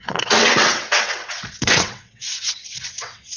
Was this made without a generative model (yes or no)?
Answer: no